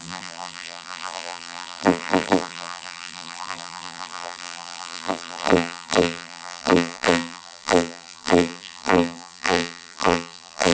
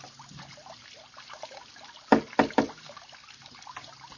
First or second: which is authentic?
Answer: second